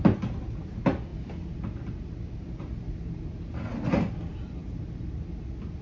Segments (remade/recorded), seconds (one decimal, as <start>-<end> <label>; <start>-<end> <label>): 0.0-5.8 recorded